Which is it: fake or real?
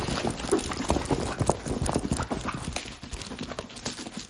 real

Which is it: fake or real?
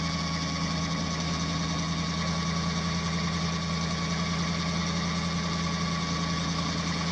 real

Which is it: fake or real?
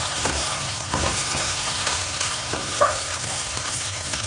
fake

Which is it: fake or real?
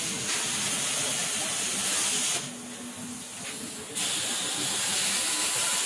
real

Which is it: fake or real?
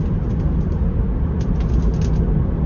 real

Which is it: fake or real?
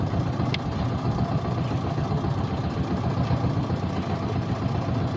real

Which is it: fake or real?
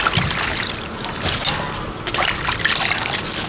real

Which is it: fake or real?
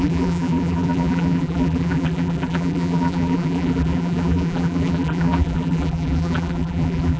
fake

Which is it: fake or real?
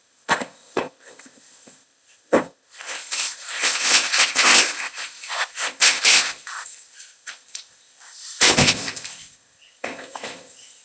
fake